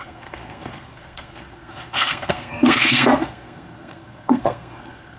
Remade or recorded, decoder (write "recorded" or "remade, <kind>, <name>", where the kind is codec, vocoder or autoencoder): remade, codec, SNAC